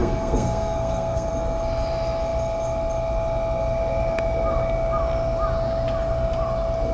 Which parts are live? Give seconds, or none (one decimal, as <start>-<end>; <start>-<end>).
1.3-6.9